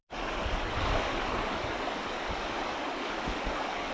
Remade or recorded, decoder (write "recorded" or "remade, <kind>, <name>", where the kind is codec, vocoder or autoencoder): remade, codec, DAC